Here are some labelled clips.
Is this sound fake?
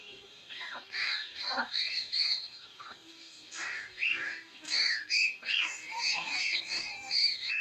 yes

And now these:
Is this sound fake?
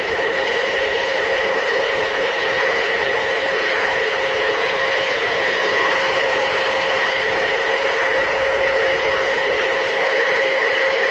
yes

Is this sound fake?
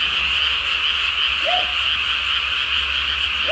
no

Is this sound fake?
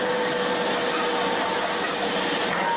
no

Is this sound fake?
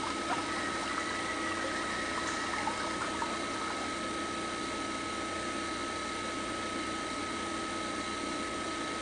no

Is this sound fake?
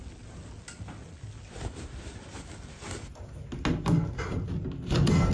no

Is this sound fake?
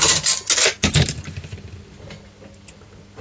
no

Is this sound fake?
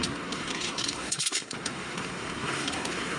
yes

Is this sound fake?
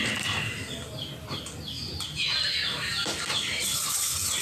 no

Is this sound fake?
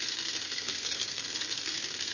yes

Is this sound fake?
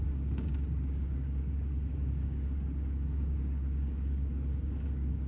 yes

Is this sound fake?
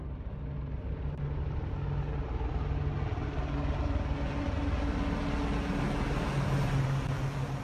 no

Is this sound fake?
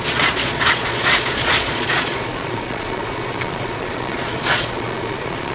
yes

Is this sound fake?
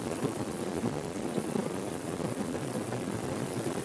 yes